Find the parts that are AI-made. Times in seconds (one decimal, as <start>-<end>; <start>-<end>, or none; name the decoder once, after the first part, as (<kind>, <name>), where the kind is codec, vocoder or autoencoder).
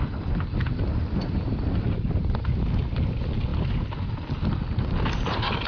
none